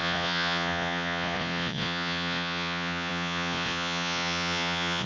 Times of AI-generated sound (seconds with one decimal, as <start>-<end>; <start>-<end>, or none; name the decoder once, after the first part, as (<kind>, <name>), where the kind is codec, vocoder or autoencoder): 0.0-5.1 (vocoder, Vocos)